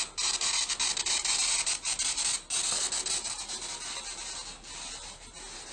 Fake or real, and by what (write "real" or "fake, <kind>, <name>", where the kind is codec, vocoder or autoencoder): real